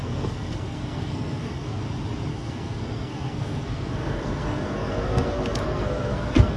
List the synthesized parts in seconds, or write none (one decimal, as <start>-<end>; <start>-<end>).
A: 0.0-1.8; 2.3-6.6

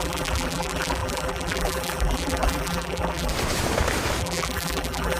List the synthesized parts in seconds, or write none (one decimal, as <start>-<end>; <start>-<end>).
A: 0.0-3.3; 4.2-5.2

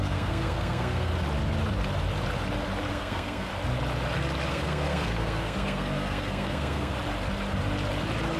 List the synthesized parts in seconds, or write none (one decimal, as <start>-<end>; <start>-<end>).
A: 0.0-1.1; 2.9-3.5; 4.5-6.9

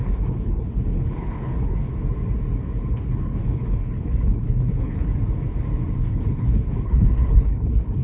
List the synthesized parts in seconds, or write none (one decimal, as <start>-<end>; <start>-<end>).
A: 0.0-1.9; 2.9-5.1; 6.0-8.0